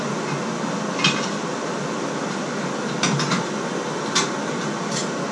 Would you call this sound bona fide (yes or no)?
yes